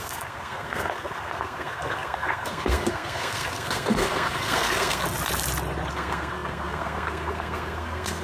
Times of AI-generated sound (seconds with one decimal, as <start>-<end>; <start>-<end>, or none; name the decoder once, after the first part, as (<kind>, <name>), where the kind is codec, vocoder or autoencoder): 0.0-5.0 (codec, SNAC); 5.9-8.2